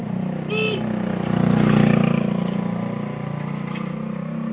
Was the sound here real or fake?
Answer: real